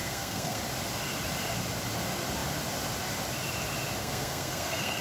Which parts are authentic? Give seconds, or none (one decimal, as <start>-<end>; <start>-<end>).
0.6-4.0